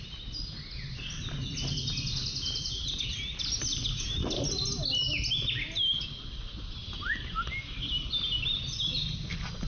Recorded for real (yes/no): yes